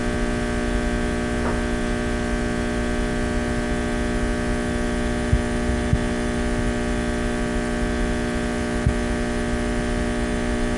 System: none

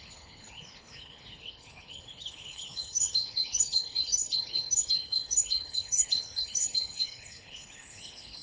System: codec, HILCodec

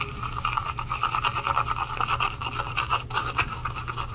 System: none